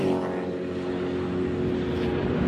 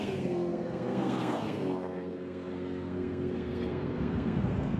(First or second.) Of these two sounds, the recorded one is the first